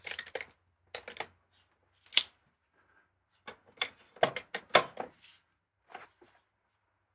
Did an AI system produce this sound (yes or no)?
no